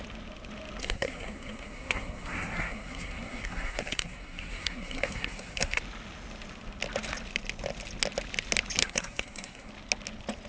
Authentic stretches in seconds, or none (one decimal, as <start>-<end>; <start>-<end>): 0.0-0.8; 5.8-8.8; 9.7-10.5